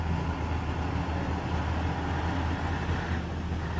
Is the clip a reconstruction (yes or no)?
no